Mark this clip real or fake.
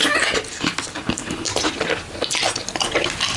real